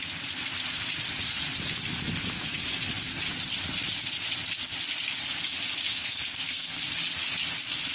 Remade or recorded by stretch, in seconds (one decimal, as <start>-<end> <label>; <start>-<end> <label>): 0.0-5.9 recorded; 5.9-6.8 remade; 6.8-7.9 recorded

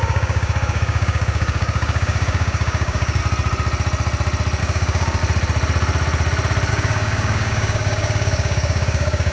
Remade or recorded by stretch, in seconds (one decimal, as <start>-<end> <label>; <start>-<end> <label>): 0.0-3.2 remade; 3.2-4.6 recorded; 4.6-5.2 remade; 5.2-6.7 recorded; 6.7-9.3 remade

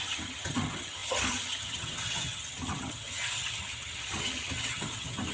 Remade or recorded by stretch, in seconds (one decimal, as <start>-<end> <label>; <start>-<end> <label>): 0.0-5.3 remade

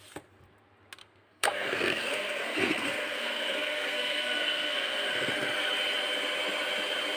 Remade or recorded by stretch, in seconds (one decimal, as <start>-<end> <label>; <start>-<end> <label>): 0.0-1.0 recorded; 1.0-5.3 remade; 5.3-7.2 recorded

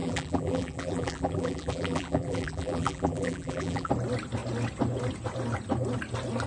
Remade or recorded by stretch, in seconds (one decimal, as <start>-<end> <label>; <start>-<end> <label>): 0.0-3.9 remade; 3.9-6.5 recorded